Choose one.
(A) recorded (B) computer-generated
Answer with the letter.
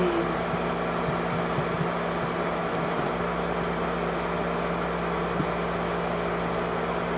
A